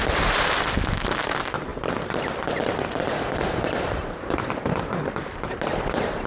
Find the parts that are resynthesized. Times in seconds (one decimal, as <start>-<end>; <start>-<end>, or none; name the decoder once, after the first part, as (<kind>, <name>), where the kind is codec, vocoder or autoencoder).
0.0-6.3 (vocoder, BigVGAN v2)